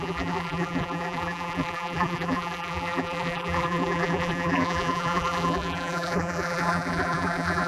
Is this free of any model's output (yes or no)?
no